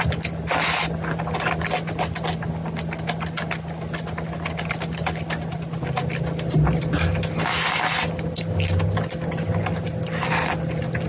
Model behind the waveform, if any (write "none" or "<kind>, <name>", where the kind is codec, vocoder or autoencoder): none